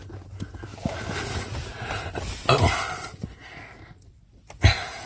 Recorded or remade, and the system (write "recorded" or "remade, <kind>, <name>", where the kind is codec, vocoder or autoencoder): recorded